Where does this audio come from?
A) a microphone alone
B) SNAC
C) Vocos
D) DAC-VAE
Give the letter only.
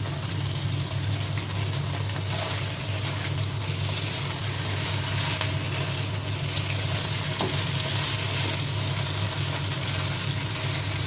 A